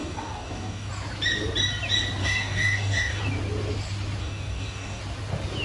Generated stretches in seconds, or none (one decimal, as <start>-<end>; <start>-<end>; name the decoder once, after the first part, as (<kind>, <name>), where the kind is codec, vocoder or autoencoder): 0.0-0.9 (codec, DAC); 2.2-3.2; 4.2-5.0